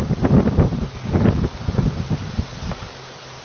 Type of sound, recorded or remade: recorded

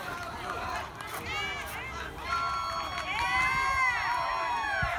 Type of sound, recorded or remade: recorded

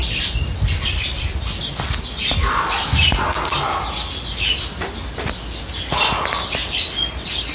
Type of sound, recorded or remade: recorded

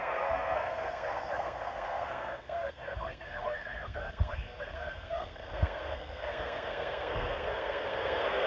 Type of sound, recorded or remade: remade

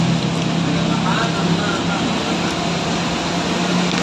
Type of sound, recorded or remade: recorded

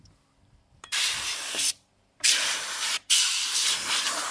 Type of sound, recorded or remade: remade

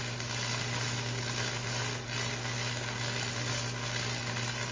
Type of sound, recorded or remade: recorded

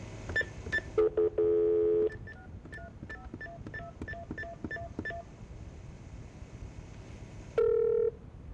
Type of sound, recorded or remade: recorded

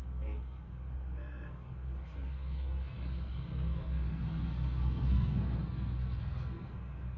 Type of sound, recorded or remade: remade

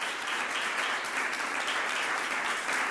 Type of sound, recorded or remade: recorded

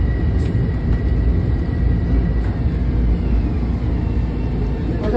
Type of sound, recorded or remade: recorded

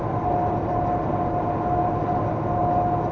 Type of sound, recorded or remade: recorded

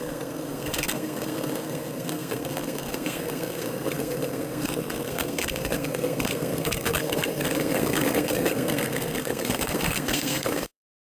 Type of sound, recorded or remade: remade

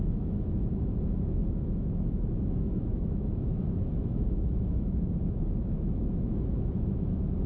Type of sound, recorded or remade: remade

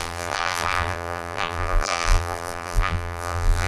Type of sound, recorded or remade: remade